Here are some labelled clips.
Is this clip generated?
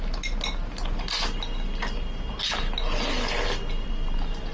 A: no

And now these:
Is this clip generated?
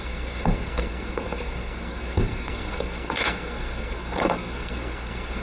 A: yes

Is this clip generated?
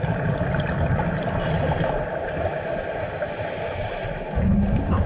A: no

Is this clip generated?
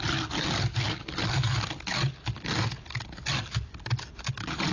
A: no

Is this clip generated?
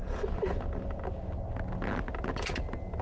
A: no